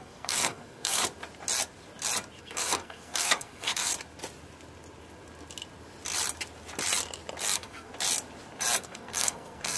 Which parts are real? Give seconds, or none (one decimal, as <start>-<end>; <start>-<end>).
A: 1.0-2.4; 3.9-7.4; 7.9-8.8